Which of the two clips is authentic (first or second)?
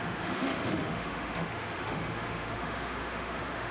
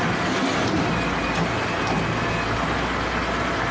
second